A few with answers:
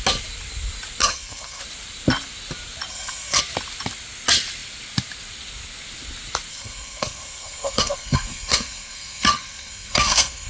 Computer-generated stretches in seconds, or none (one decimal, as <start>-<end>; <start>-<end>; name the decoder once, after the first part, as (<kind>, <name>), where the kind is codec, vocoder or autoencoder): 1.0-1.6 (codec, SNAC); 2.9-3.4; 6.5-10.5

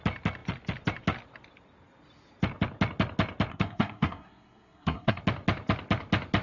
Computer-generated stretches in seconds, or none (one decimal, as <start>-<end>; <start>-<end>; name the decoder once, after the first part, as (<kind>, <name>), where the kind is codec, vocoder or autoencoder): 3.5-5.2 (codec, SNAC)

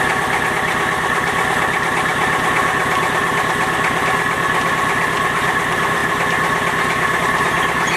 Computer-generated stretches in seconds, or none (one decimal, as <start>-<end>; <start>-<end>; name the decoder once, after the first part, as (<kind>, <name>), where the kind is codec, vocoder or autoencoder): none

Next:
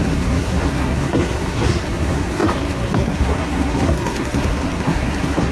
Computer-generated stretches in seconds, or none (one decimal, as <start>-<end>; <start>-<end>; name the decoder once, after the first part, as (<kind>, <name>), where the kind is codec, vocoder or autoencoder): 0.0-5.5 (codec, SNAC)

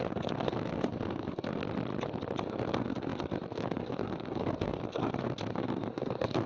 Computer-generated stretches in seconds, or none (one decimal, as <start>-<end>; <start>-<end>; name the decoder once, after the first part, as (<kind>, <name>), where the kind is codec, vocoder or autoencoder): 0.0-1.6 (codec, SNAC); 2.4-6.5

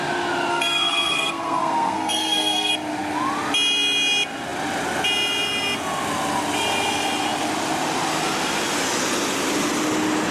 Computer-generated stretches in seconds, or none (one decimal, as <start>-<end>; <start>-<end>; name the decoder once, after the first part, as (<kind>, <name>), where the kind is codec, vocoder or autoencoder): 0.5-2.7 (codec, SNAC)

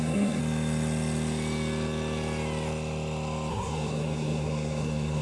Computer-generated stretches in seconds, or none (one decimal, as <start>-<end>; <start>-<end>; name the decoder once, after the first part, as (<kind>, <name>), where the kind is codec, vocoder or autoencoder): 0.0-0.4 (codec, SNAC); 3.5-5.2

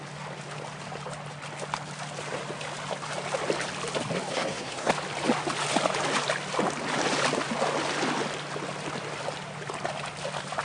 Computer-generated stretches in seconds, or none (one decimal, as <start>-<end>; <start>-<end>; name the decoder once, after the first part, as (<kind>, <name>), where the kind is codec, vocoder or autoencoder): 4.3-4.9 (codec, SNAC)